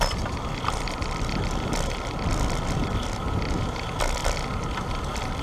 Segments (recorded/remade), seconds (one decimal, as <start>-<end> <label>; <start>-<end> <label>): 0.0-4.2 remade; 4.2-5.4 recorded